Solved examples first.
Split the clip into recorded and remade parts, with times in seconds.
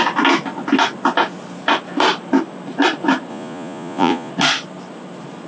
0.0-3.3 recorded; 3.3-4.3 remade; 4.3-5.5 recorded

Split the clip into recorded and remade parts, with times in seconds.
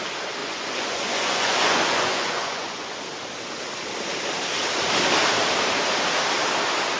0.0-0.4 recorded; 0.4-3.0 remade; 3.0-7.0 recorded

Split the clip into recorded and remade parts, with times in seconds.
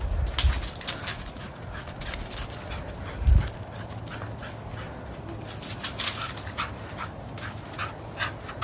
0.0-1.1 recorded; 1.1-2.0 remade; 2.0-8.6 recorded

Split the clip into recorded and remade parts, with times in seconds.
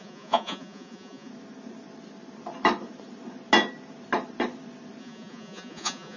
0.0-1.3 remade; 1.3-5.0 recorded; 5.0-6.2 remade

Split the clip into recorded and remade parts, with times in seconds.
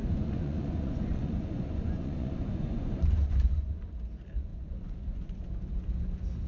0.0-3.9 remade; 3.9-4.5 recorded; 4.5-5.4 remade; 5.4-6.5 recorded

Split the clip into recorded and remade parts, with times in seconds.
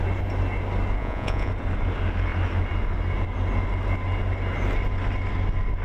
0.0-1.0 recorded; 1.0-1.5 remade; 1.5-5.8 recorded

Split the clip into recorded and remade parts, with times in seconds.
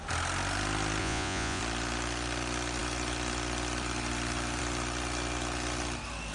0.0-1.0 recorded; 1.0-1.6 remade; 1.6-6.3 recorded